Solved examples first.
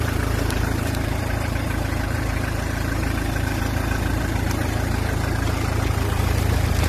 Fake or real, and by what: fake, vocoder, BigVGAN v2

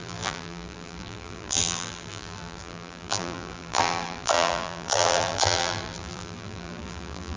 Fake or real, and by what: fake, vocoder, BigVGAN v2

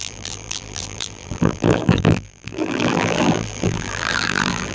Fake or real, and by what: fake, vocoder, BigVGAN v2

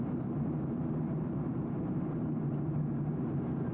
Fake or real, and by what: fake, vocoder, BigVGAN v2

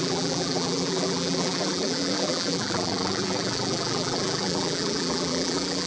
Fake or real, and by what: fake, vocoder, BigVGAN v2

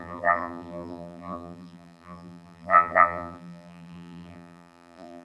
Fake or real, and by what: fake, vocoder, BigVGAN v2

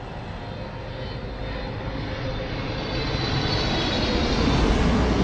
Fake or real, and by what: real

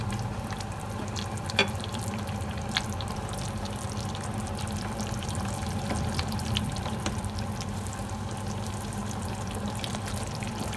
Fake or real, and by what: fake, vocoder, BigVGAN v2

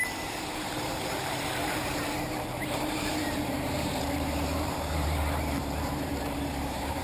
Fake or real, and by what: fake, vocoder, BigVGAN v2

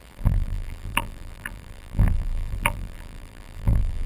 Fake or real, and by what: fake, vocoder, BigVGAN v2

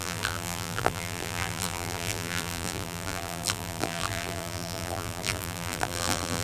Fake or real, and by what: fake, vocoder, BigVGAN v2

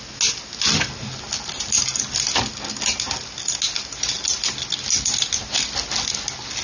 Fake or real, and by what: real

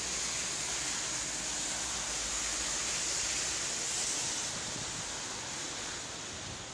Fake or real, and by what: real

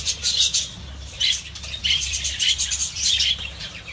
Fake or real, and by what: fake, vocoder, BigVGAN v2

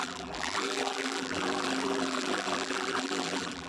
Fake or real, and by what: fake, vocoder, BigVGAN v2